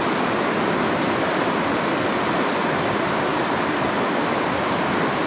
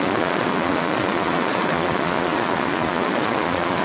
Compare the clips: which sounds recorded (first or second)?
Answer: first